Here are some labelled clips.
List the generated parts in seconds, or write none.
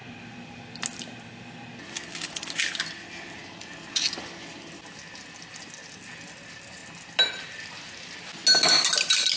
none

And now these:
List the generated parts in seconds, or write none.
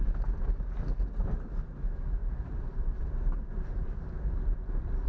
2.2-5.1 (vocoder, BigVGAN v2)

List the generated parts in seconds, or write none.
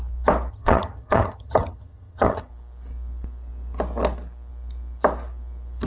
0.5-2.5 (vocoder, HiFi-GAN)